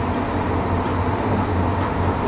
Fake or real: real